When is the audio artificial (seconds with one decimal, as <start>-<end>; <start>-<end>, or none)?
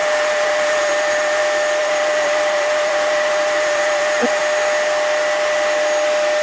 0.0-1.4; 1.8-4.4